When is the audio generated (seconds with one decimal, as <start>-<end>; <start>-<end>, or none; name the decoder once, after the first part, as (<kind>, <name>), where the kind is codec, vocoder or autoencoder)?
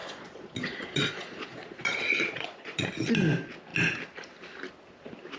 0.0-2.9 (vocoder, Vocos)